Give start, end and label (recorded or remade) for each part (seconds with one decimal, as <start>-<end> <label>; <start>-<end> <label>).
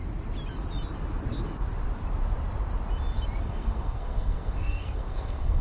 0.0-3.4 recorded; 3.4-5.6 remade